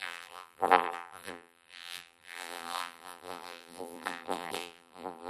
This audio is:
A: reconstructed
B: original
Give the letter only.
A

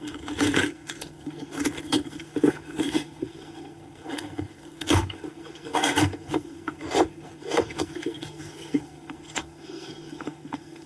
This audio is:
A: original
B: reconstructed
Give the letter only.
B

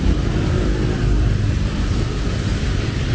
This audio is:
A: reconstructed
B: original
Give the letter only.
B